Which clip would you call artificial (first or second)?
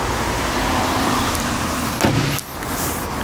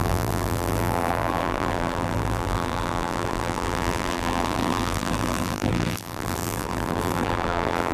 second